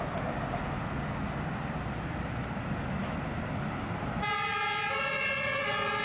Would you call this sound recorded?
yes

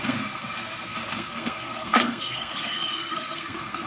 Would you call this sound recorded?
no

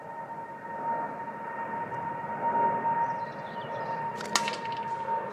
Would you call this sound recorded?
yes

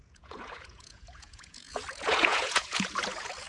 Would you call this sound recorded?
no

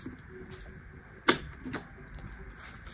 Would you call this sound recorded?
yes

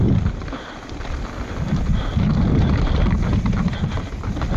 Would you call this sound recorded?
yes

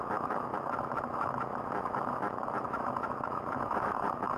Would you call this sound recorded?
no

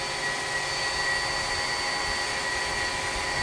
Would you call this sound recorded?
yes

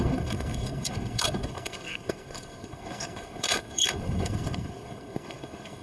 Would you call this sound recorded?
no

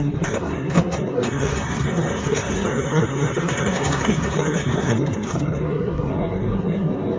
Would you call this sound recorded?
no